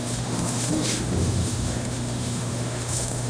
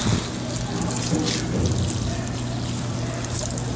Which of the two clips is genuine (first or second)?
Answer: second